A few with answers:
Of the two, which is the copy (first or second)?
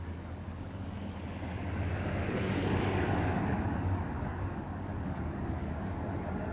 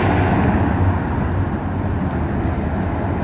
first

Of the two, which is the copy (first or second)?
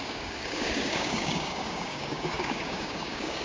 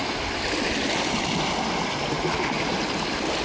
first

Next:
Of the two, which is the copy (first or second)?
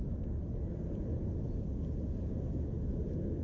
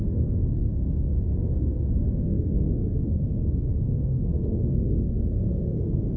second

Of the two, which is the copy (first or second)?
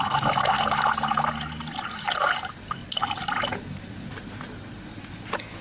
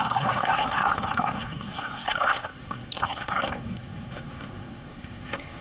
second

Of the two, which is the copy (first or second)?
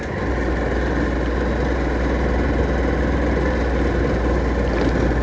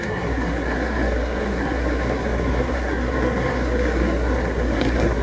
second